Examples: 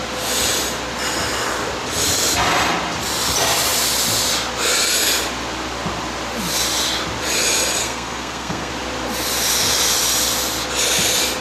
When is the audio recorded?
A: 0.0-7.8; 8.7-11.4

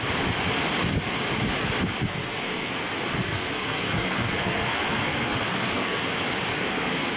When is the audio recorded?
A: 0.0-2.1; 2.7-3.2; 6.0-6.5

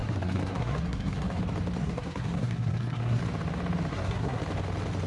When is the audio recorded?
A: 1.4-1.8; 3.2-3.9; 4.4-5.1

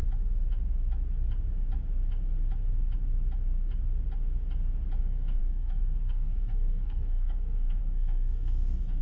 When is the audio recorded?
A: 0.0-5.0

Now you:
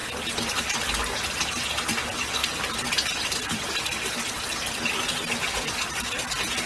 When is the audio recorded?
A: 0.0-6.7